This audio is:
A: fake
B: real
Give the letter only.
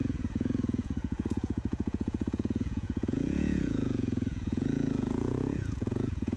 A